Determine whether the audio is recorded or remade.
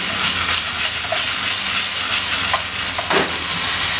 recorded